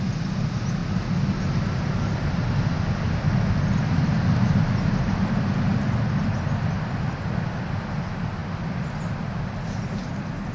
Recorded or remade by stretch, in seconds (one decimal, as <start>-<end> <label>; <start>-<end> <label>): 0.0-10.5 recorded